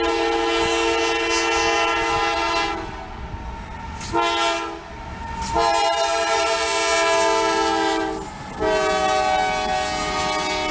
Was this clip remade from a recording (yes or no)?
no